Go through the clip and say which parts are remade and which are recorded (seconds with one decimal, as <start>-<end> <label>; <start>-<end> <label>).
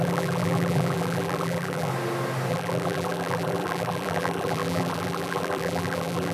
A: 0.0-1.9 remade; 1.9-2.5 recorded; 2.5-6.3 remade